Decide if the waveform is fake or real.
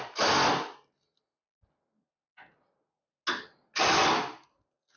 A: real